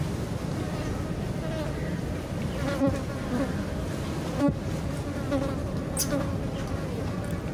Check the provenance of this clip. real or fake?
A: real